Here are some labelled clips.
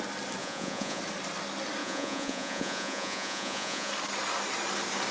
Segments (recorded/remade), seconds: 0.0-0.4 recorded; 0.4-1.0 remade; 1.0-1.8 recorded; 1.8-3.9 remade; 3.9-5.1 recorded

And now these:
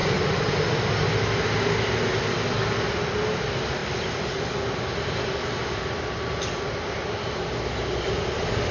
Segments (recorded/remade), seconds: 0.0-8.7 recorded

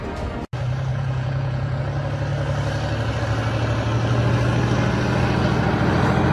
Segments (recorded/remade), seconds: 0.0-0.9 recorded; 0.9-1.8 remade; 1.8-6.3 recorded

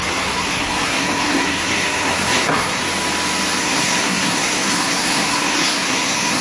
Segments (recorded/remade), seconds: 0.0-2.8 remade; 2.8-3.6 recorded; 3.6-6.4 remade

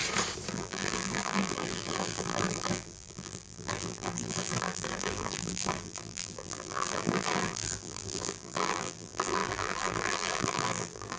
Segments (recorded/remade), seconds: 0.0-0.5 recorded; 0.5-11.2 remade

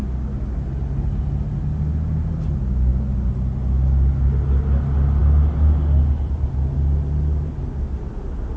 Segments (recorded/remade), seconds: 0.0-8.6 recorded

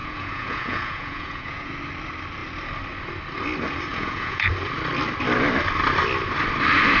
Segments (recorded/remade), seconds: 0.0-1.7 remade; 1.7-3.9 recorded; 3.9-4.5 remade; 4.5-7.0 recorded

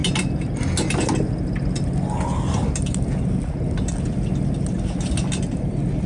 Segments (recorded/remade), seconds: 0.0-6.1 recorded